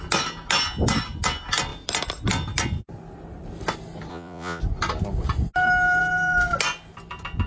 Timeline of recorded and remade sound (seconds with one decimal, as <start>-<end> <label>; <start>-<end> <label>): 0.0-4.1 recorded; 4.1-4.6 remade; 4.6-7.5 recorded

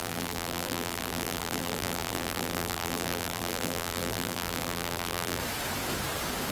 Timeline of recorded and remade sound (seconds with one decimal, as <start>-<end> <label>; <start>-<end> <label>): 0.0-5.4 remade; 5.4-6.5 recorded